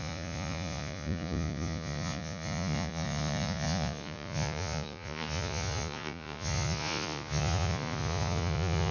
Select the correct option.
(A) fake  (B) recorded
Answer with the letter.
A